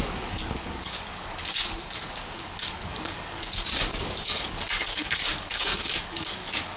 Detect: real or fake fake